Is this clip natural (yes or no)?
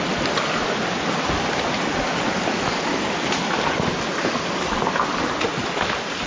yes